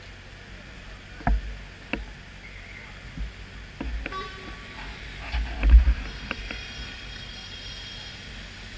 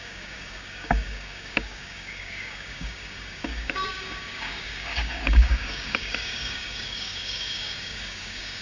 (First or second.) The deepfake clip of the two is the second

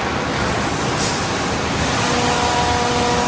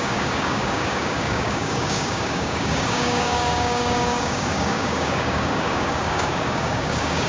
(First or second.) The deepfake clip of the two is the second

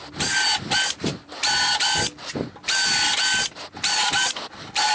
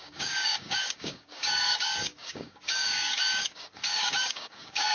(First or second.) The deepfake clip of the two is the second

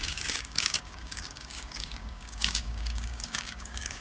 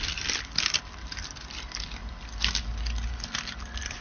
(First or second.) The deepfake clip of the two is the first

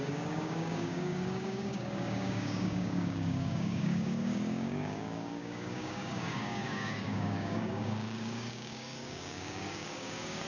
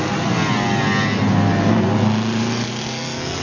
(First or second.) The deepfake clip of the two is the first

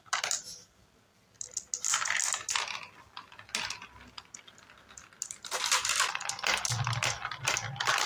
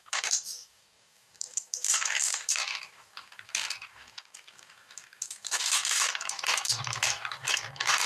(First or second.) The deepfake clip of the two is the second